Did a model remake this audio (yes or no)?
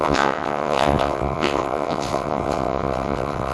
yes